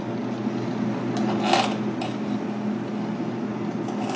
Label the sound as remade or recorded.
recorded